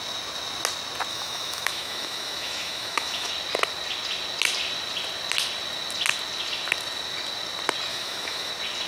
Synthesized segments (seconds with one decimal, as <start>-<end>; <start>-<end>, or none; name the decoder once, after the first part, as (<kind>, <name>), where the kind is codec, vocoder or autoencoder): 1.1-3.3 (autoencoder, DAC-VAE); 7.9-8.5

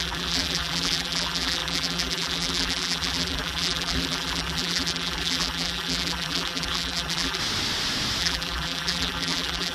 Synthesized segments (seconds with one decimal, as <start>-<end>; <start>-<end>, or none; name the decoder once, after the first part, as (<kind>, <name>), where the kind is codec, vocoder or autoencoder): 0.0-7.4 (vocoder, BigVGAN v2); 8.2-9.7